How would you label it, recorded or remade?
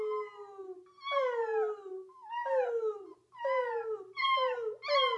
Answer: recorded